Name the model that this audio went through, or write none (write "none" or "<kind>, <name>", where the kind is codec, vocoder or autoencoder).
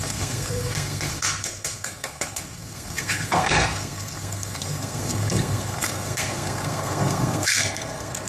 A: codec, SNAC